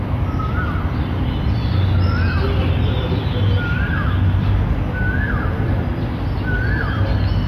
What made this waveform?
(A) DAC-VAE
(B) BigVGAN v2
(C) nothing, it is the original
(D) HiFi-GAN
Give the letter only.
C